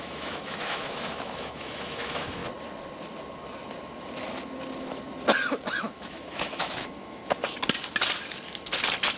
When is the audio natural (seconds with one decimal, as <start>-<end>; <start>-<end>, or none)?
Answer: 2.4-5.8; 7.2-9.2